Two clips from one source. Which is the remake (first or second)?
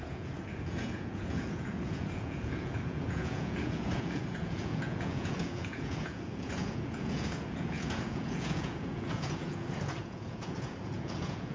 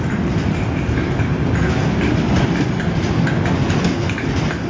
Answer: first